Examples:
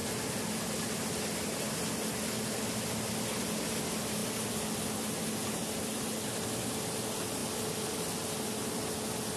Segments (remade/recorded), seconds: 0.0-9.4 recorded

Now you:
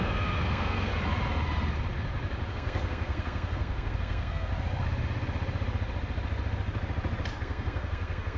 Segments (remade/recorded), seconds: 0.0-0.9 remade; 0.9-2.5 recorded; 2.5-4.5 remade; 4.5-7.4 recorded; 7.4-8.4 remade

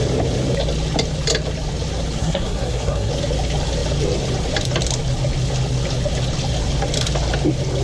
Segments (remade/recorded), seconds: 0.0-2.2 recorded; 2.2-3.1 remade; 3.1-7.8 recorded

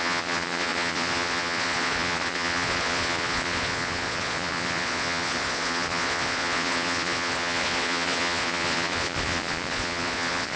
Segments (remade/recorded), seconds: 0.0-10.6 remade

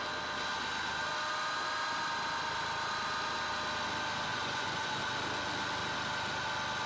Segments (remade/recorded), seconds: 0.0-4.3 recorded; 4.3-5.0 remade; 5.0-6.9 recorded

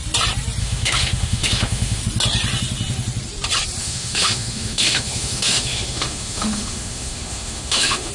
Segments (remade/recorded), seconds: 0.0-0.6 recorded; 0.6-2.0 remade; 2.0-3.8 recorded; 3.8-8.1 remade

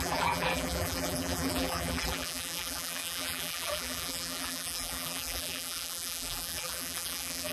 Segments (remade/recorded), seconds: 0.0-7.5 remade